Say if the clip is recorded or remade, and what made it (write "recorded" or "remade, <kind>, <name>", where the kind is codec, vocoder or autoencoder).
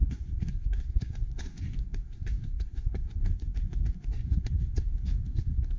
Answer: remade, codec, SNAC